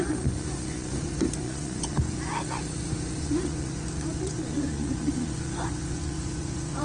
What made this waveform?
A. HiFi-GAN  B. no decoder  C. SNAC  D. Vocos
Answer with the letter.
D